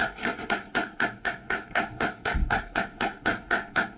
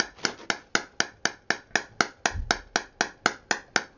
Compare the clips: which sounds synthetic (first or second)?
first